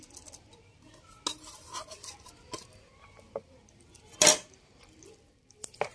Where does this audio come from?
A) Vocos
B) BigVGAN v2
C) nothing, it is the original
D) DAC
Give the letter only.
C